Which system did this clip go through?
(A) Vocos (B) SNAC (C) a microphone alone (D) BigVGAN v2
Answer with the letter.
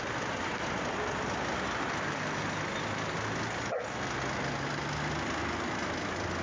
C